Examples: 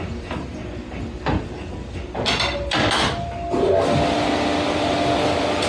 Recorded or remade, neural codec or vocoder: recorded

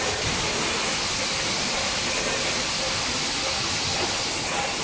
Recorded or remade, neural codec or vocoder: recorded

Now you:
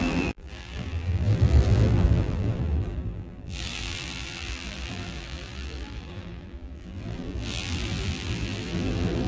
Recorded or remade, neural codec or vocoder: remade, vocoder, BigVGAN v2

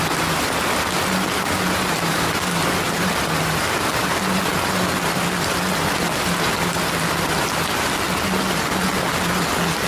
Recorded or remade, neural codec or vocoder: recorded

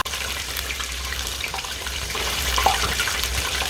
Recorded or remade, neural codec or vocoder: remade, vocoder, BigVGAN v2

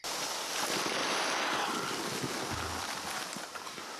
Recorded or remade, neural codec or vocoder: remade, vocoder, BigVGAN v2